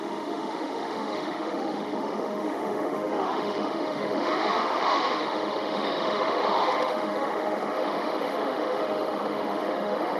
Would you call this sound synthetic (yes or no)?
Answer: yes